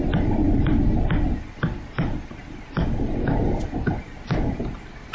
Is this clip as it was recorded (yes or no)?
yes